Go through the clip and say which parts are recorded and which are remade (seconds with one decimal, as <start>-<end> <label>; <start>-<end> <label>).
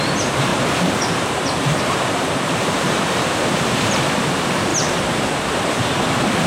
0.0-0.5 recorded; 0.5-4.0 remade; 4.0-6.5 recorded